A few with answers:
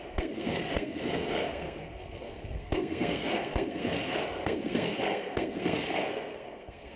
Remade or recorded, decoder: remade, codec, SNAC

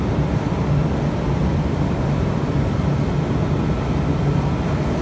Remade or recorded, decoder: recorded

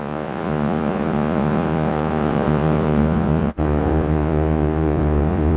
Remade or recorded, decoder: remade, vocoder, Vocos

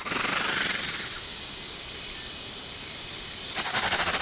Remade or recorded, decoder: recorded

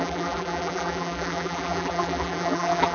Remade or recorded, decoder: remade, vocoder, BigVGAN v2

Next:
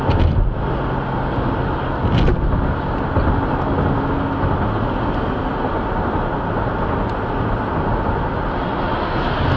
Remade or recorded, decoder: recorded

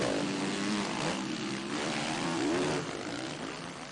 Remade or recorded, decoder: remade, vocoder, BigVGAN v2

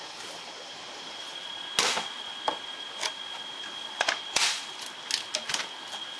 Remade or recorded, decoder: recorded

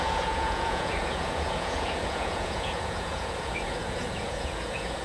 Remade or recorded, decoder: remade, vocoder, Vocos